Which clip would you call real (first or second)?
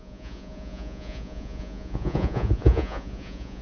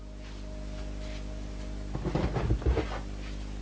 second